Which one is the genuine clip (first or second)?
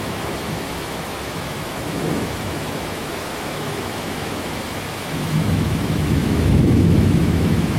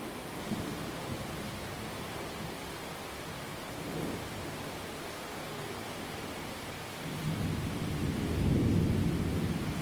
second